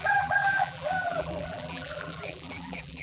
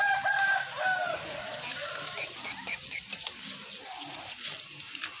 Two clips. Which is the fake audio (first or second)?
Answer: first